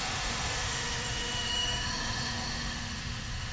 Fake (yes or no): yes